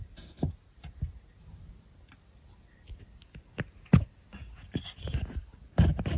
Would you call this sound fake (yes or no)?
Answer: no